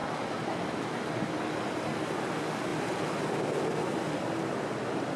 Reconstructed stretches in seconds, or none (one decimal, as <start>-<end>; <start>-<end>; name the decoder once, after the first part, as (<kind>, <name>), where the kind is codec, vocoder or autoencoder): 0.0-1.4 (vocoder, BigVGAN v2)